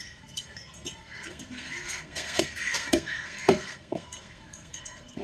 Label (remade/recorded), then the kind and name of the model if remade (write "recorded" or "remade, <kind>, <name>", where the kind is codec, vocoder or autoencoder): remade, codec, SNAC